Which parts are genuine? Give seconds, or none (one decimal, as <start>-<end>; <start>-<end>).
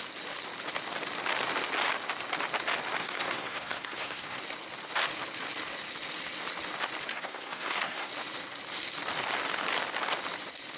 0.0-3.0; 4.4-7.1; 8.1-10.8